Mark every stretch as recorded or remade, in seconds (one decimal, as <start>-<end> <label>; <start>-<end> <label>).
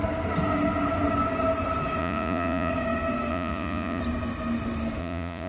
0.0-2.0 recorded; 2.0-2.7 remade; 2.7-3.3 recorded; 3.3-4.0 remade; 4.0-5.0 recorded; 5.0-5.5 remade